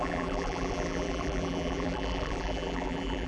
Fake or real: fake